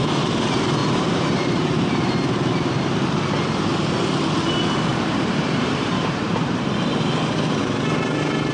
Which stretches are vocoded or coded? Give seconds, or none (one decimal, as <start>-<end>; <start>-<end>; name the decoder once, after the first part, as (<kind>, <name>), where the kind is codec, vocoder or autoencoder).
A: 0.8-2.3 (vocoder, BigVGAN v2); 4.9-6.7